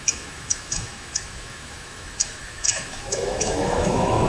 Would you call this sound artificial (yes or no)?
yes